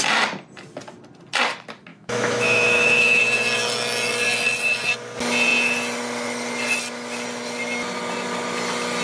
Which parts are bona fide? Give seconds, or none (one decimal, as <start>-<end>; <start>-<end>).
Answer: 0.0-1.9; 3.2-9.0